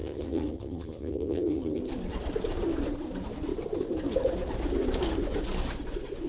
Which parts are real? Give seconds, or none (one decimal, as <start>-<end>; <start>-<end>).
1.8-6.3